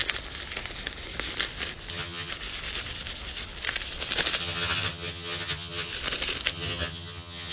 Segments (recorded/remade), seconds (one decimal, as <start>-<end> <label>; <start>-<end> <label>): 0.0-1.9 recorded; 1.9-2.3 remade; 2.3-4.4 recorded; 4.4-5.9 remade; 5.9-6.5 recorded; 6.5-7.5 remade